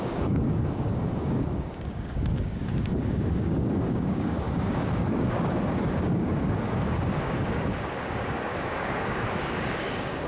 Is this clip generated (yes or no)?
yes